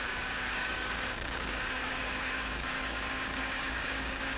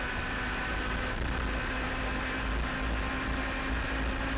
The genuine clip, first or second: second